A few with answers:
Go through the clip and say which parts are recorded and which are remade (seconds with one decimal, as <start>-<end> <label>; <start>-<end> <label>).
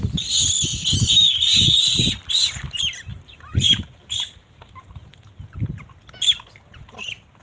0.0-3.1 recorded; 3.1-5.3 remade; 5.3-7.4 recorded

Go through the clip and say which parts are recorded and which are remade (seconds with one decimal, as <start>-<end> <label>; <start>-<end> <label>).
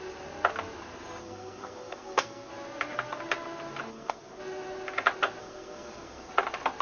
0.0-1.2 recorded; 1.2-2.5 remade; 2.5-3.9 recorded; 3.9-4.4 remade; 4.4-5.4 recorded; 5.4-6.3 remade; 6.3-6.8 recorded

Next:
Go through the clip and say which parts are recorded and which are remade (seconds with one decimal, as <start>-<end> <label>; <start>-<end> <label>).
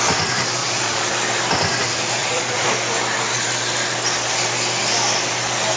0.0-0.6 recorded; 0.6-1.1 remade; 1.1-2.2 recorded; 2.2-2.7 remade; 2.7-5.8 recorded